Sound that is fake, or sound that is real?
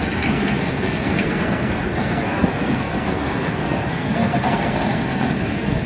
fake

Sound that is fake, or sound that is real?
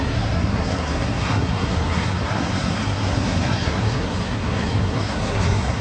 fake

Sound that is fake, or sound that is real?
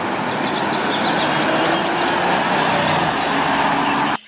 real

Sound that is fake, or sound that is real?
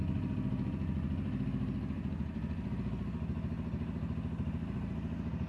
real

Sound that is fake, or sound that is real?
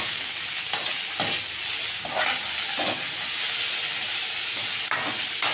real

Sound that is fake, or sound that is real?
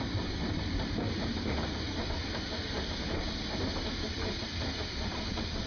real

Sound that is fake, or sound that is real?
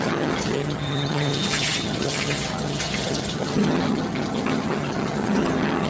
fake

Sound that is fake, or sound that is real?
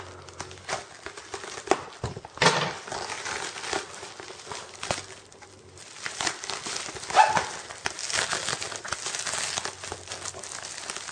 real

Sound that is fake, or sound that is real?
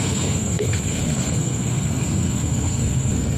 fake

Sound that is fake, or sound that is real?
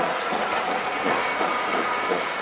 fake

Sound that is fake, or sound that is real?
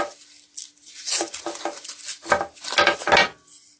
real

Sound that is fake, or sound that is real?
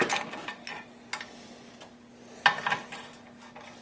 real